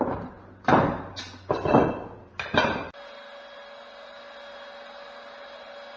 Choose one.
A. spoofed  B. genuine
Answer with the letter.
B